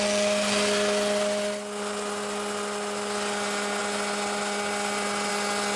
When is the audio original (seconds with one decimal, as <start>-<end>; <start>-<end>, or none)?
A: 0.0-5.8